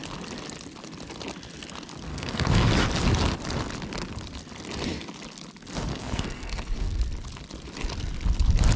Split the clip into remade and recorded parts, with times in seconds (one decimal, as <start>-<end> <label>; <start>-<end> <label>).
0.0-2.1 recorded; 2.1-2.7 remade; 2.7-5.9 recorded; 5.9-7.0 remade; 7.0-8.8 recorded